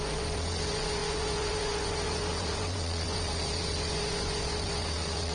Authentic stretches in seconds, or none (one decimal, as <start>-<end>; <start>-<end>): none